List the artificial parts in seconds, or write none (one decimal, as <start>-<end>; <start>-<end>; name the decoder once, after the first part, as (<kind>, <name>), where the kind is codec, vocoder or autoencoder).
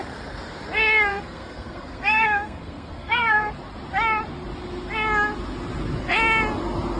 1.1-3.5 (codec, SNAC)